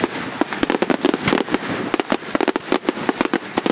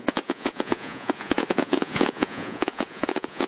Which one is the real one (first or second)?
first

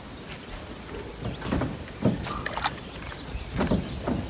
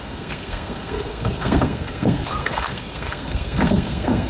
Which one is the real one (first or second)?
first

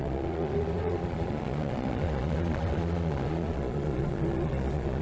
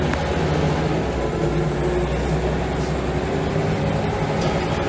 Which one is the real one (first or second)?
second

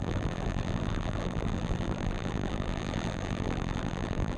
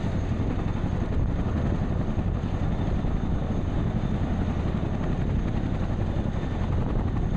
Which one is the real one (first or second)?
second